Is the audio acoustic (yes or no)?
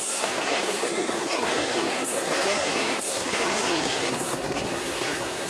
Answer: no